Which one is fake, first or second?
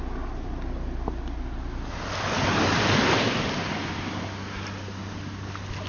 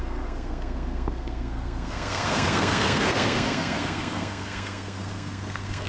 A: second